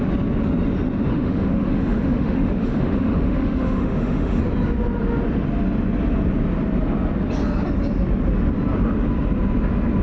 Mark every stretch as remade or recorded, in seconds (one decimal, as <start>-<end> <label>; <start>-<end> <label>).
0.0-1.1 recorded; 1.1-4.4 remade; 4.4-10.0 recorded